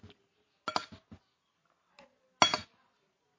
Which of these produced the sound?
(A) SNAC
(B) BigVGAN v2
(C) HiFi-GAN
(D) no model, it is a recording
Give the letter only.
D